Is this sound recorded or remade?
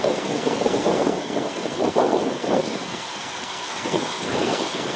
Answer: remade